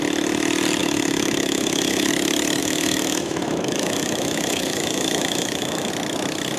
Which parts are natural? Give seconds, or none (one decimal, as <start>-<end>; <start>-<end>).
0.0-0.8; 2.1-2.6; 5.9-6.6